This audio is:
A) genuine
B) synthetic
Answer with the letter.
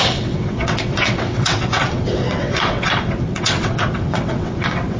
B